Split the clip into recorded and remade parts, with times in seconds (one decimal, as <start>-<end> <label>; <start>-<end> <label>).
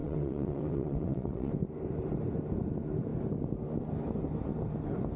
0.0-1.5 remade; 1.5-5.2 recorded